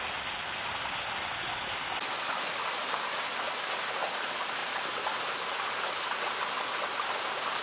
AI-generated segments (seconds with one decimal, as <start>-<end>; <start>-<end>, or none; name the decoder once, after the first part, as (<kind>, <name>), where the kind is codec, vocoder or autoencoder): none

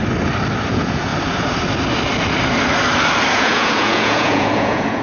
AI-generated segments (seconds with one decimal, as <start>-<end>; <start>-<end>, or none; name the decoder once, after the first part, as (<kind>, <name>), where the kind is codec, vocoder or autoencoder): 0.7-1.1 (vocoder, Vocos); 3.3-5.0

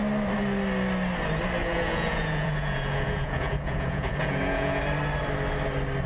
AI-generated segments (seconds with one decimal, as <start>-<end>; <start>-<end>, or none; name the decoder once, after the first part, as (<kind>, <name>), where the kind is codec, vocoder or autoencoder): 1.6-4.8 (vocoder, Vocos)

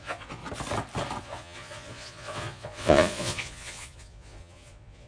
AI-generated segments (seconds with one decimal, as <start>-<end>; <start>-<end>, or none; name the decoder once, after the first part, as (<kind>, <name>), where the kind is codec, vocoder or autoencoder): 0.0-0.4 (vocoder, Vocos); 1.2-5.1

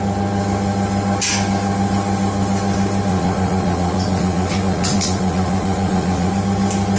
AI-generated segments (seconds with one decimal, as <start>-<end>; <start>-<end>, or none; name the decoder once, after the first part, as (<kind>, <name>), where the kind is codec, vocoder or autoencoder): 3.1-6.3 (vocoder, Vocos)

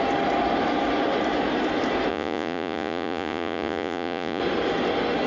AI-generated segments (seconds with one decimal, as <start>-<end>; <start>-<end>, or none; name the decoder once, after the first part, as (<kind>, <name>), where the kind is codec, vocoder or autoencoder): 2.1-4.4 (vocoder, Vocos)

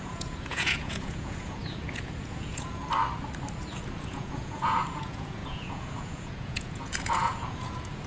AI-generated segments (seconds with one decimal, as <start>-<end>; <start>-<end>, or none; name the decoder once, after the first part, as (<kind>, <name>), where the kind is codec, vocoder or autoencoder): 0.0-2.8 (vocoder, Vocos); 3.7-8.1